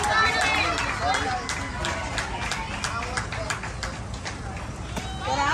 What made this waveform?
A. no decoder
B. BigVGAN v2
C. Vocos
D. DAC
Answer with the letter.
A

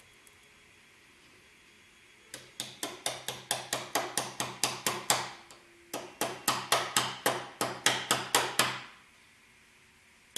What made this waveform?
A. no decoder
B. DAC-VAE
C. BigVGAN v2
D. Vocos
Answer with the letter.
A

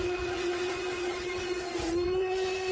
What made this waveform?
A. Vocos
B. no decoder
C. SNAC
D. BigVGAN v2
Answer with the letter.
A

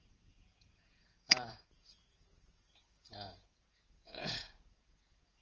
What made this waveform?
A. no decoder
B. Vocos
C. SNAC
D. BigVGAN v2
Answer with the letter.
B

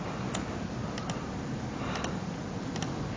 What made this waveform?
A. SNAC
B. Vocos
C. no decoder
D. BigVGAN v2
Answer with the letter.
C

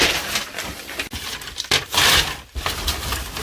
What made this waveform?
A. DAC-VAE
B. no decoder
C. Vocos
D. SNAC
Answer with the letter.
B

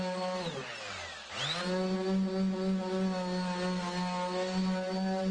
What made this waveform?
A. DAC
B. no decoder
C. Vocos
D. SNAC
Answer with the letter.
B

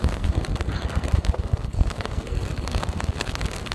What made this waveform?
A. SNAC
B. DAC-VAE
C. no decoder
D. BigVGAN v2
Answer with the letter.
A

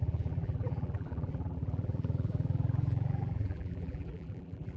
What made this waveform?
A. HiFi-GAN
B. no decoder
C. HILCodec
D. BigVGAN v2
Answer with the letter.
D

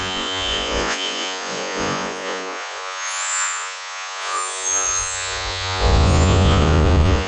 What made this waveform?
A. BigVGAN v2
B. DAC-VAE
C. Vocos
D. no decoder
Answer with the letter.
C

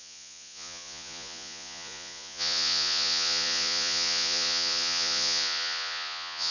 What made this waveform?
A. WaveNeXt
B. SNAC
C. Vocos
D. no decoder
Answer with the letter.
C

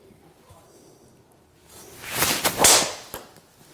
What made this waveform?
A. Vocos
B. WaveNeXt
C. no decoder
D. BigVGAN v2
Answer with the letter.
C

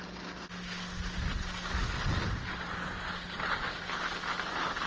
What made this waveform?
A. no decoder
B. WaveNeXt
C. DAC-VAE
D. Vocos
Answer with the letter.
A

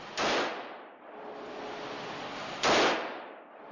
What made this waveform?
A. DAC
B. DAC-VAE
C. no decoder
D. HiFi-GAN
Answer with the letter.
C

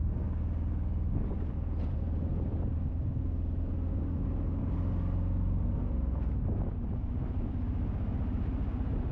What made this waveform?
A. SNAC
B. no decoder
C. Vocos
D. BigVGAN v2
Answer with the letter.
B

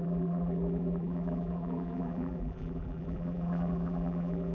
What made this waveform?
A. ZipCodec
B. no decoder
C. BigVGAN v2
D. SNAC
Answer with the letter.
C